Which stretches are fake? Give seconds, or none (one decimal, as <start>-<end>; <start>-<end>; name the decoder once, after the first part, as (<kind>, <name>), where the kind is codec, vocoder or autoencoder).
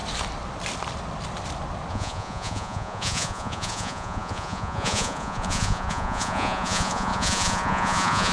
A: 1.9-8.3 (vocoder, Vocos)